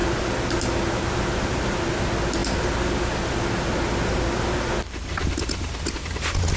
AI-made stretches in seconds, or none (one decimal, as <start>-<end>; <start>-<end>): none